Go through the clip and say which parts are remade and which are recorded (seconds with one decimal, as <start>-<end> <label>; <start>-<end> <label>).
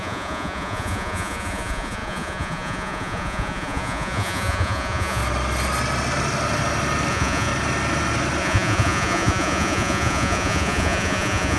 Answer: 0.0-5.2 remade; 5.2-7.1 recorded; 7.1-7.5 remade; 7.5-8.4 recorded; 8.4-11.6 remade